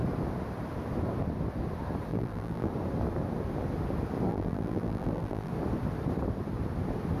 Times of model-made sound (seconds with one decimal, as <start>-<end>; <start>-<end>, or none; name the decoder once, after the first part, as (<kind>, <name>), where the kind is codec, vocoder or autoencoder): 2.1-2.7 (vocoder, BigVGAN v2); 4.3-5.5